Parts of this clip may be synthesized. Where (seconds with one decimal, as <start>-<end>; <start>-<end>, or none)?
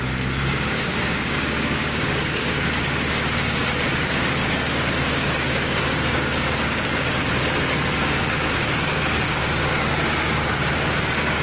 0.0-7.4; 8.5-11.4